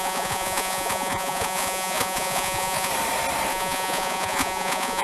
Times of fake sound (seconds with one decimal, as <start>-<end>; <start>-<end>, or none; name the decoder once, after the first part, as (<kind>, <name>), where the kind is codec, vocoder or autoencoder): 0.0-2.9 (vocoder, Vocos); 3.5-5.0